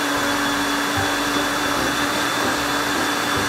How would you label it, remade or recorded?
recorded